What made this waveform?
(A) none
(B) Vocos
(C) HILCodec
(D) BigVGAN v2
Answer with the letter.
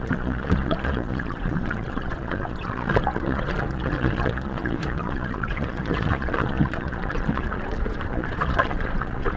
B